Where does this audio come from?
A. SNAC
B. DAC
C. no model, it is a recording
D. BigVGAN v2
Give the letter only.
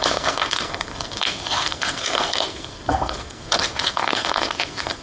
A